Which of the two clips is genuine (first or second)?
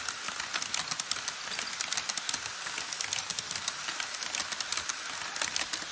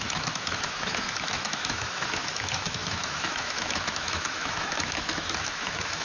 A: first